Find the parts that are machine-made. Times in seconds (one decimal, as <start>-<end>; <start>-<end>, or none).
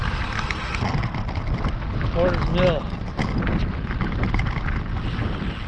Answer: 0.0-0.6